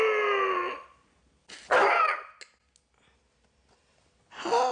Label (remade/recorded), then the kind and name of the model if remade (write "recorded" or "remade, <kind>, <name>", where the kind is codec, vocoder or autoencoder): recorded